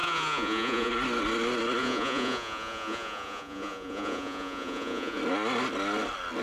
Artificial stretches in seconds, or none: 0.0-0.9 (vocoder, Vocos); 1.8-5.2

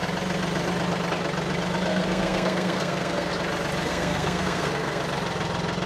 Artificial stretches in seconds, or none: 1.9-3.3 (codec, SNAC); 3.8-5.0

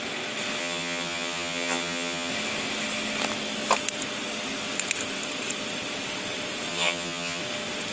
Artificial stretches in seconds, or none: 0.6-2.3 (vocoder, HiFi-GAN); 6.7-7.4